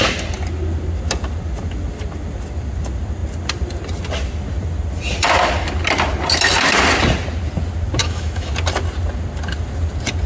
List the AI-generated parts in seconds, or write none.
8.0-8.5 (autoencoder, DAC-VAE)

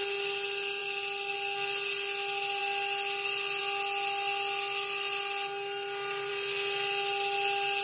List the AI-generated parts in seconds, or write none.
none

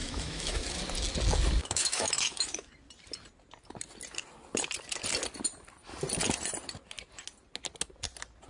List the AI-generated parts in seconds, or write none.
0.0-0.8 (autoencoder, DAC-VAE); 1.6-2.7

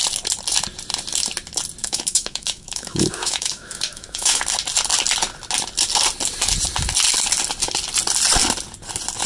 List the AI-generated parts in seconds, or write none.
1.8-4.4 (autoencoder, DAC-VAE)